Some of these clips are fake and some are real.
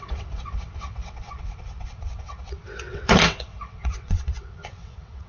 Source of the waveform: fake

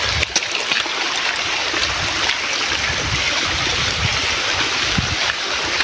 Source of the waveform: real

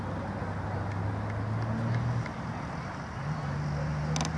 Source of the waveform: real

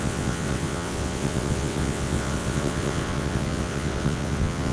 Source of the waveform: fake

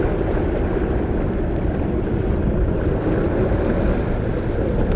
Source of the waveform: real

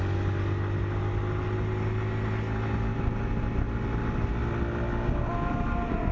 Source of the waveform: real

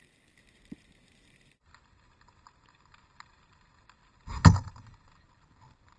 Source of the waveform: real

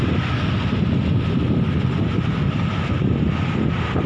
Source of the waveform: real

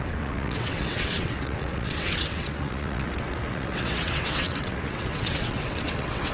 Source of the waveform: fake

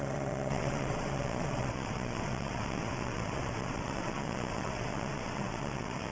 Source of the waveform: fake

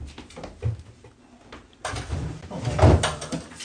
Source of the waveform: real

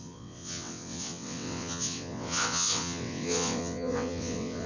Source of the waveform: fake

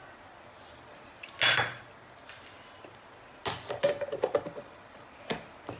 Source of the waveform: real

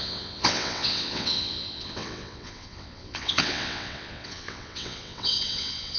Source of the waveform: fake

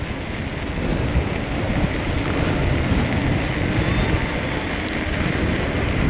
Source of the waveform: real